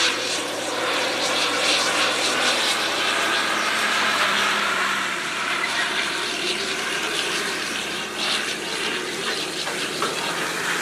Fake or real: fake